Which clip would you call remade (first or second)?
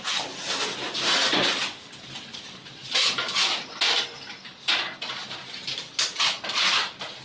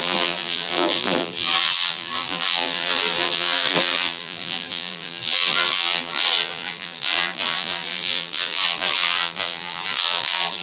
second